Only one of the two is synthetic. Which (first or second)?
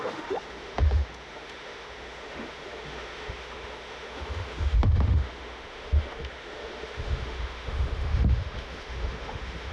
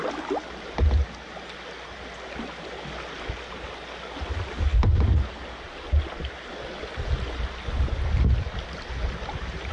first